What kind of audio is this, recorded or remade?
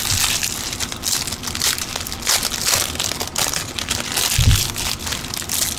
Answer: recorded